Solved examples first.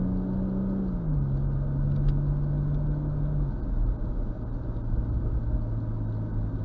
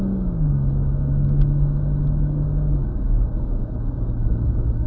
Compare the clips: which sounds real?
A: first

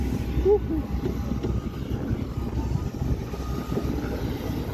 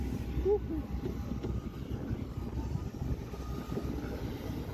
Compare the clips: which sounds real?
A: first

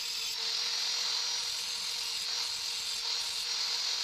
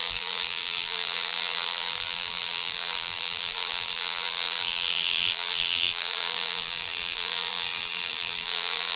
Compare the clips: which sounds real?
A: first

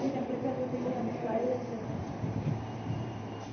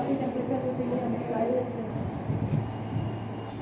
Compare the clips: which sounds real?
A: second